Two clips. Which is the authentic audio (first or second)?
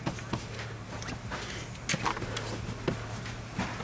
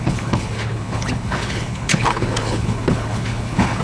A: first